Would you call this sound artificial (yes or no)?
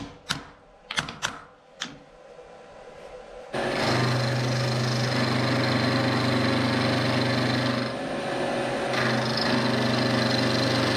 no